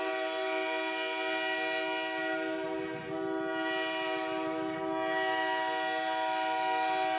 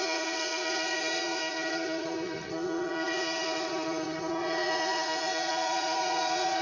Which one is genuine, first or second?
first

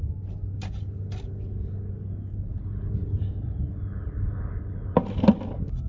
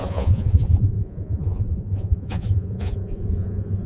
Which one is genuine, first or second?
first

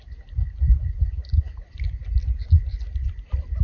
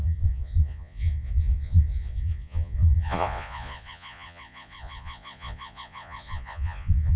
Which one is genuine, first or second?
first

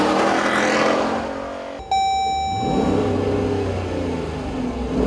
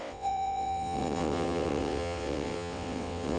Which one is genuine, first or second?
first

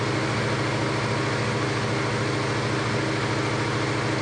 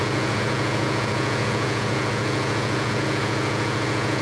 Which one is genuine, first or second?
first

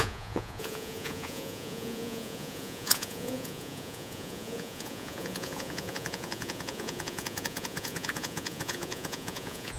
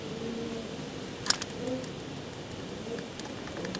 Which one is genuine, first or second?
second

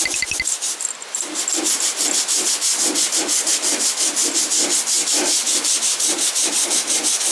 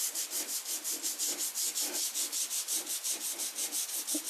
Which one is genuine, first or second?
second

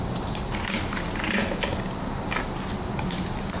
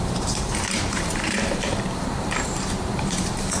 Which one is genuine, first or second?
first